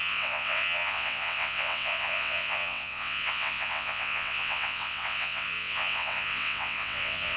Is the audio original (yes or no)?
no